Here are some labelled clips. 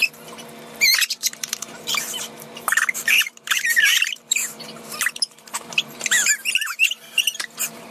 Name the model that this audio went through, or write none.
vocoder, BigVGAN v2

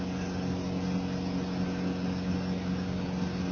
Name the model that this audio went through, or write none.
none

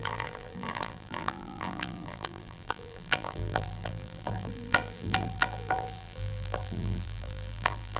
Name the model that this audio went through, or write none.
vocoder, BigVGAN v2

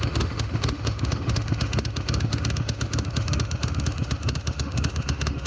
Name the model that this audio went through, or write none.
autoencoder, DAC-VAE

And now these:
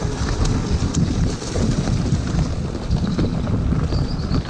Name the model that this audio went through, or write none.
none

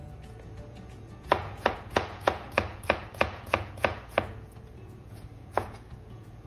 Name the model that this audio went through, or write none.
vocoder, Vocos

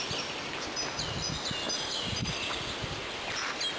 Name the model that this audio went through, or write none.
none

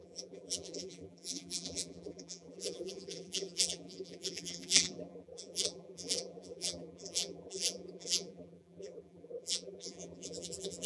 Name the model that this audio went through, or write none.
vocoder, BigVGAN v2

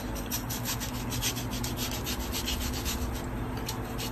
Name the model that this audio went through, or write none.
none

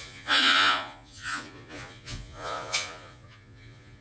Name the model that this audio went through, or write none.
vocoder, Vocos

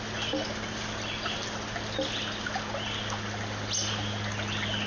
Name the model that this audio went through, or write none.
none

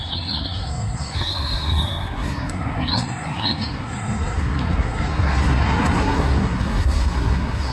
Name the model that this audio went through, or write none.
codec, SNAC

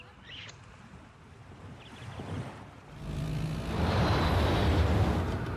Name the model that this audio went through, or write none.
none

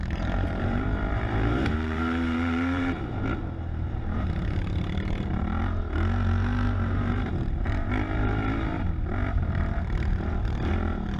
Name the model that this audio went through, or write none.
vocoder, BigVGAN v2